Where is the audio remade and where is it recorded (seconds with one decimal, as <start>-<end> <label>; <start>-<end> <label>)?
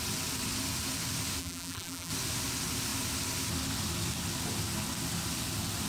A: 0.0-1.4 recorded; 1.4-2.1 remade; 2.1-5.9 recorded